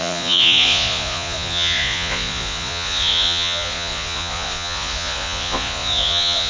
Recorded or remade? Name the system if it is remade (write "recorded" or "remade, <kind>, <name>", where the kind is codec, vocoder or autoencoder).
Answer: remade, vocoder, Vocos